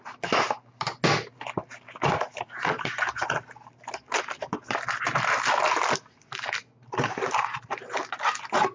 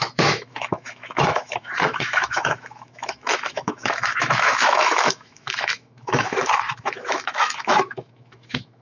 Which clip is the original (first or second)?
first